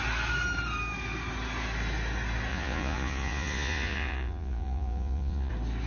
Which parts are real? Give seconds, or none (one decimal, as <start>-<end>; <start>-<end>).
0.0-2.5; 5.5-5.9